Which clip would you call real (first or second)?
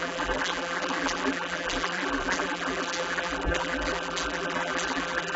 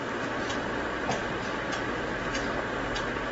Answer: second